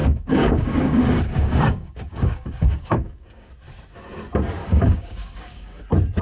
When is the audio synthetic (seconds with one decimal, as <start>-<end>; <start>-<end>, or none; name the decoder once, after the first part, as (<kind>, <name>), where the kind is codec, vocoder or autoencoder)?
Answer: 0.0-3.5 (codec, DAC); 4.6-5.8